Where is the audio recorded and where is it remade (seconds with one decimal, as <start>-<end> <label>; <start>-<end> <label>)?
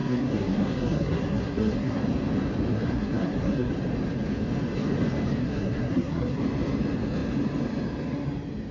0.0-2.0 remade; 2.0-2.7 recorded; 2.7-3.7 remade; 3.7-5.4 recorded; 5.4-6.4 remade; 6.4-8.7 recorded